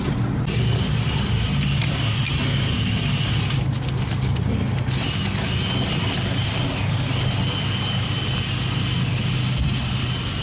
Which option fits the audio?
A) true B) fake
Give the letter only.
A